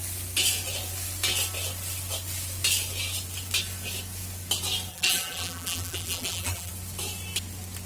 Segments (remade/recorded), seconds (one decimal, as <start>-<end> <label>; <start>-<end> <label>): 0.0-4.9 recorded; 4.9-6.7 remade; 6.7-7.9 recorded